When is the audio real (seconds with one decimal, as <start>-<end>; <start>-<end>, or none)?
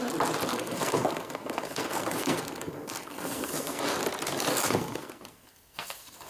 0.0-0.5; 3.8-4.5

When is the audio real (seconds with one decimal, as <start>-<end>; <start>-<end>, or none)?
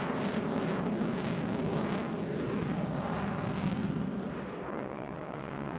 0.0-4.7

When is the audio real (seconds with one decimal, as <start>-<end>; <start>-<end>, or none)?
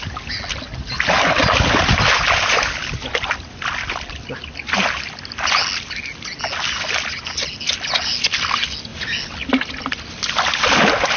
0.0-11.2